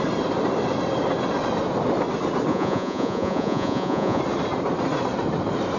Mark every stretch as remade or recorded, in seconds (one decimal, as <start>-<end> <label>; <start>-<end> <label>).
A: 0.0-2.5 recorded; 2.5-4.2 remade; 4.2-5.8 recorded